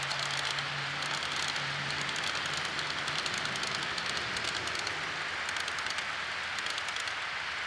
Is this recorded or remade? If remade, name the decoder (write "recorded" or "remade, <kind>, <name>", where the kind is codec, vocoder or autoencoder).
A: recorded